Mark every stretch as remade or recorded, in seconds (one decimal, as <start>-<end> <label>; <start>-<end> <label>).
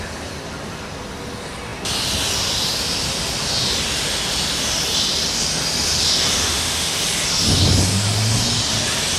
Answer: 0.0-6.4 recorded; 6.4-7.0 remade; 7.0-9.2 recorded